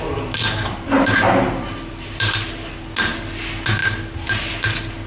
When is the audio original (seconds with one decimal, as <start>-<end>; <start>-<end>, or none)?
0.0-5.1